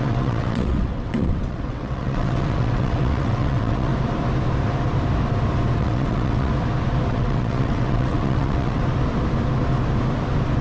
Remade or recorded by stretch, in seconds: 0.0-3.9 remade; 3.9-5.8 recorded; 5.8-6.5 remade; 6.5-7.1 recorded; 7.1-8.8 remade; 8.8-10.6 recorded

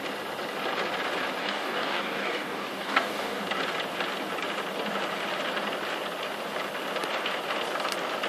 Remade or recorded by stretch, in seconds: 0.0-1.4 recorded; 1.4-3.4 remade; 3.4-8.3 recorded

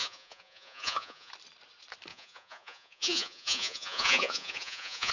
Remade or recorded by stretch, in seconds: 0.0-1.3 remade; 1.3-2.1 recorded; 2.1-5.1 remade

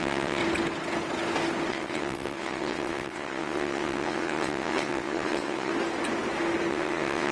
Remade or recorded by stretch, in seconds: 0.0-0.4 remade; 0.4-1.7 recorded; 1.7-5.7 remade; 5.7-6.7 recorded; 6.7-7.3 remade